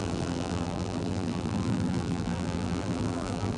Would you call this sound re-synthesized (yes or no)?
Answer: yes